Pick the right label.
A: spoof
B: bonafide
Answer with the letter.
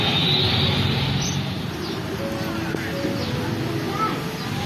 B